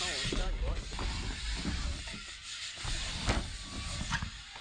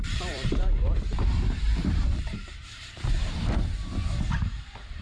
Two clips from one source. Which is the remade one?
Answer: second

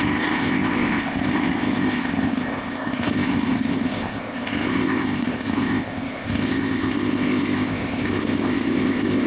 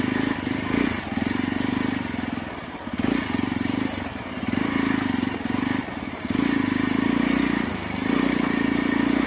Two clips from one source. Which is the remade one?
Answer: first